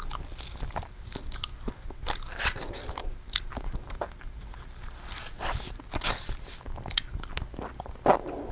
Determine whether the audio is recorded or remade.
recorded